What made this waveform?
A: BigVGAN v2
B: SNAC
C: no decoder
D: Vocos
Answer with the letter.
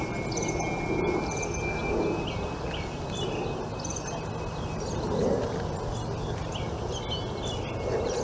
C